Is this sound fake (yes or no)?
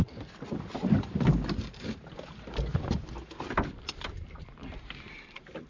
no